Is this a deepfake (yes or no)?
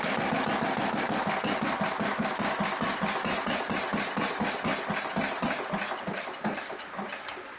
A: no